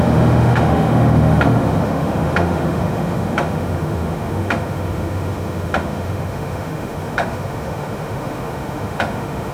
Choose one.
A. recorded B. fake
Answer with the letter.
B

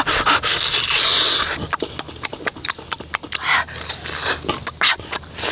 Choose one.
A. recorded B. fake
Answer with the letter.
A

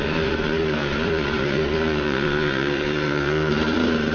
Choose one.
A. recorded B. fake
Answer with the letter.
B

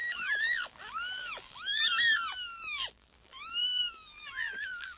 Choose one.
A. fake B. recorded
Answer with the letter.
A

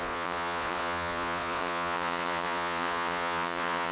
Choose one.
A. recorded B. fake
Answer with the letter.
B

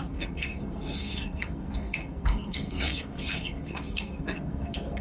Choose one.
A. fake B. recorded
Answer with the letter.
A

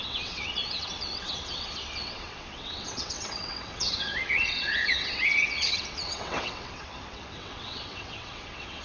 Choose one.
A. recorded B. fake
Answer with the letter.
B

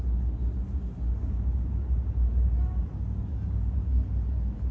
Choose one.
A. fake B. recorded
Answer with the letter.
B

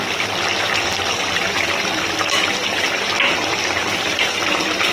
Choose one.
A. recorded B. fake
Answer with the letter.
B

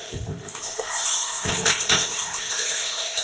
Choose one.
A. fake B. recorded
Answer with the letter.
A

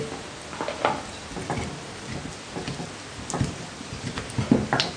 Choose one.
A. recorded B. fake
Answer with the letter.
A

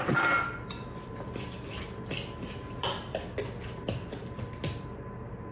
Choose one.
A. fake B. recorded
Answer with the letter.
B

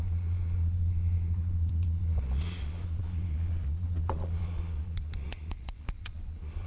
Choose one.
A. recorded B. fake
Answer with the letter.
B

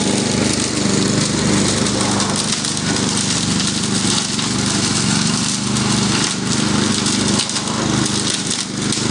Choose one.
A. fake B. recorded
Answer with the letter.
B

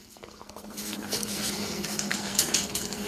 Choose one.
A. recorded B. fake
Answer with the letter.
B